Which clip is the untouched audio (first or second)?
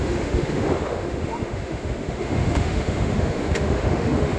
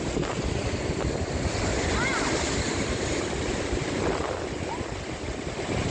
second